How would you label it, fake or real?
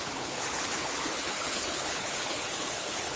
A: fake